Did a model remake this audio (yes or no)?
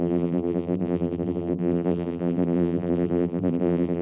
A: yes